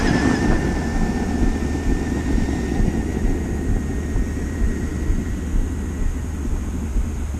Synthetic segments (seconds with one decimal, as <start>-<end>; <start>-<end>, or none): 4.9-5.4